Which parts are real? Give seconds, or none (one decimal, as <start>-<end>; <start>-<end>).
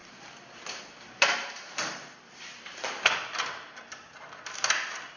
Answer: 3.1-5.2